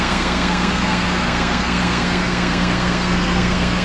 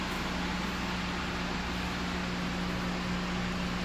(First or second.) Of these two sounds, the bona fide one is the second